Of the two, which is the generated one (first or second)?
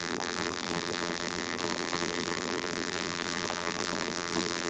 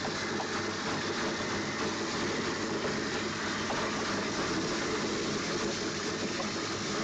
first